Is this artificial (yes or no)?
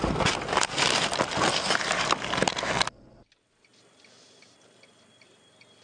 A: no